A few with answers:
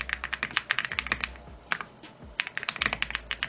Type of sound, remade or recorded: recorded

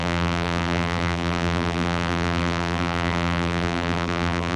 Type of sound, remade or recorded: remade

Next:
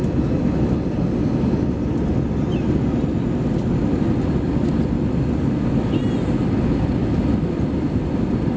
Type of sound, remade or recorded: recorded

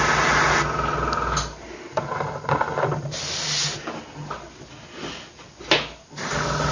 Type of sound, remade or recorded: recorded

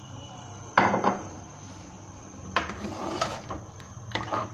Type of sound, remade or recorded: remade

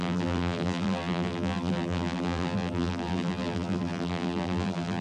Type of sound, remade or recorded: remade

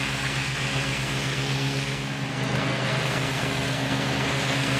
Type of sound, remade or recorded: remade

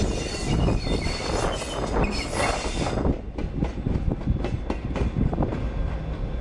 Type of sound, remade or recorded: recorded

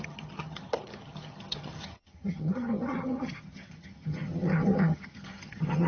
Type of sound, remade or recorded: remade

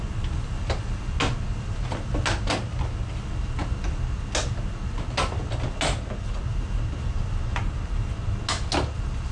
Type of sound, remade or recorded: recorded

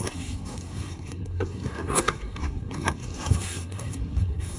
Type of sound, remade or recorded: remade